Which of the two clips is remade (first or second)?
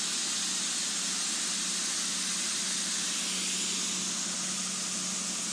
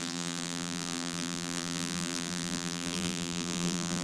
second